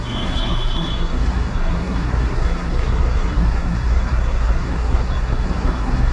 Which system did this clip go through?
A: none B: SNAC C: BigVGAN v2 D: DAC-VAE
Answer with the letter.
B